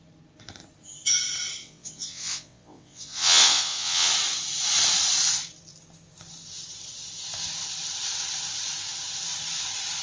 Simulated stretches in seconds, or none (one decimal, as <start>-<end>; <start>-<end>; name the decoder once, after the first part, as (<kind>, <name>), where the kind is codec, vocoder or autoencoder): 1.6-4.1 (vocoder, WaveNeXt)